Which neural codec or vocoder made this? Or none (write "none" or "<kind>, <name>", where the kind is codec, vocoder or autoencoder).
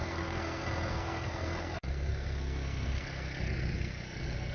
codec, SNAC